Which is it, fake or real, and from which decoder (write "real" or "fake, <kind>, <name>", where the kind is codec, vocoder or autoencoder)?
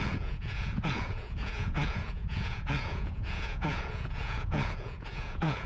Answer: fake, vocoder, Vocos